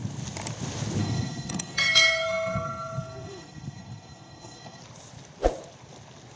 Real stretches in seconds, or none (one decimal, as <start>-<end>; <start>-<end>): 0.0-1.0; 4.8-6.4